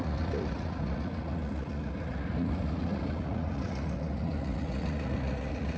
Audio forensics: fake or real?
fake